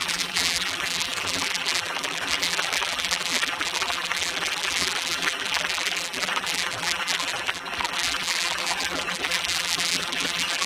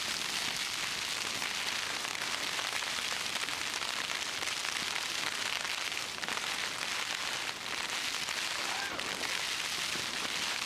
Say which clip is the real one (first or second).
second